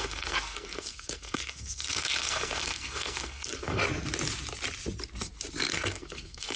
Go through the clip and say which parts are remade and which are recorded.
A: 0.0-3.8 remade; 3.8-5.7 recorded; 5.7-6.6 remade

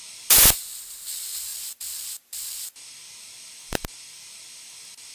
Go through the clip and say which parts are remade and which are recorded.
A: 0.0-5.1 recorded

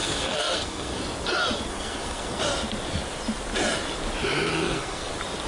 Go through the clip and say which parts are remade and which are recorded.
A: 0.0-1.0 remade; 1.0-1.7 recorded; 1.7-2.4 remade; 2.4-4.5 recorded; 4.5-5.1 remade; 5.1-5.5 recorded

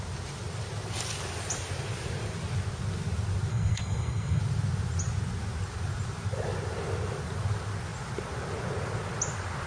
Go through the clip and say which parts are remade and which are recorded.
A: 0.0-3.5 recorded; 3.5-4.4 remade; 4.4-9.7 recorded

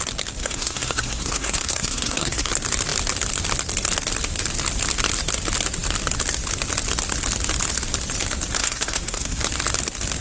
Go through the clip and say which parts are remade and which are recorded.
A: 0.0-0.4 recorded; 0.4-2.5 remade; 2.5-8.6 recorded; 8.6-9.4 remade; 9.4-10.2 recorded